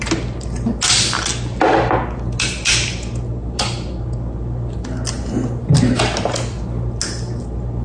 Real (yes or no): yes